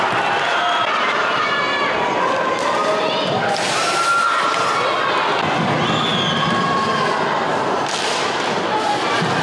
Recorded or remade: recorded